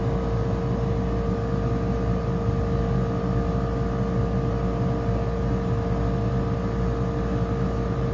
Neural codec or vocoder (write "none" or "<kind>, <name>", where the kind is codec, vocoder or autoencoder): none